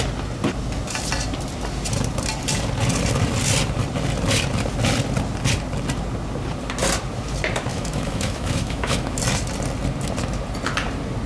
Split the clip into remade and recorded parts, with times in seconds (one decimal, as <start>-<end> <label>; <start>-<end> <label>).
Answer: 0.0-7.7 recorded; 7.7-9.2 remade; 9.2-11.3 recorded